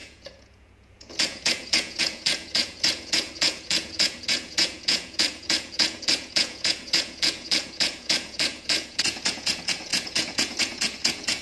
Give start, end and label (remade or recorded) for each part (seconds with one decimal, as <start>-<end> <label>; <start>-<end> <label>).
0.0-11.4 remade